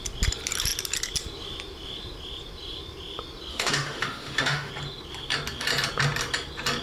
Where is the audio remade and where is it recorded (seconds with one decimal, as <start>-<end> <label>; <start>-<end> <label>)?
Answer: 0.0-3.5 recorded; 3.5-4.7 remade; 4.7-6.8 recorded